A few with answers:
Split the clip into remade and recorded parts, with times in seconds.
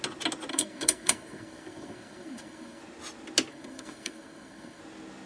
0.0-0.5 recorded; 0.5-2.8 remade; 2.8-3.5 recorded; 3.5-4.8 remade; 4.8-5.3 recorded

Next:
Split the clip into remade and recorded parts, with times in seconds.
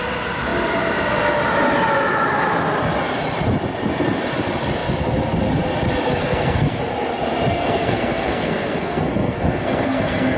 0.0-6.2 recorded; 6.2-6.8 remade; 6.8-7.5 recorded; 7.5-10.4 remade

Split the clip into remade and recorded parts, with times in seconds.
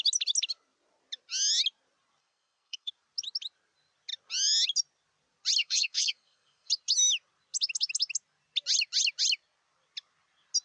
0.0-2.2 recorded; 2.2-2.9 remade; 2.9-5.6 recorded; 5.6-6.7 remade; 6.7-10.6 recorded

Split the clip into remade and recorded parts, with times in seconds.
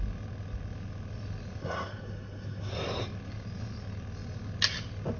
0.0-1.6 recorded; 1.6-2.7 remade; 2.7-5.2 recorded